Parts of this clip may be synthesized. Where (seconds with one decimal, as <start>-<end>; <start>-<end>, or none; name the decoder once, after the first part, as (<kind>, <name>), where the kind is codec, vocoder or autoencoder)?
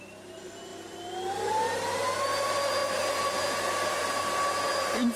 none